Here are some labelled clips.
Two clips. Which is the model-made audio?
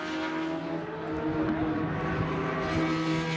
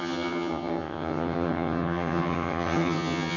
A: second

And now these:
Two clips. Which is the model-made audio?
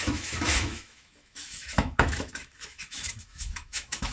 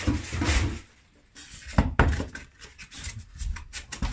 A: first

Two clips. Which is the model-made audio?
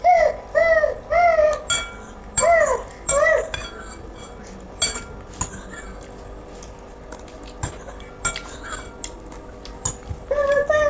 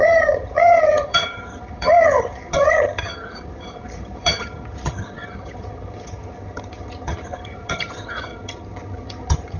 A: second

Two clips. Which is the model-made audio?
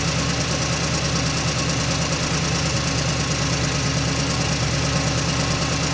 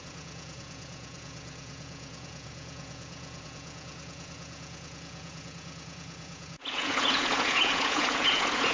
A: second